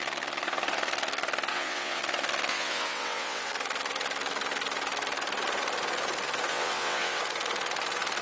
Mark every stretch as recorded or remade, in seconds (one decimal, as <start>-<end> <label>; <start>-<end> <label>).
0.0-1.5 recorded; 1.5-2.0 remade; 2.0-2.5 recorded; 2.5-3.5 remade; 3.5-6.5 recorded; 6.5-7.2 remade; 7.2-8.2 recorded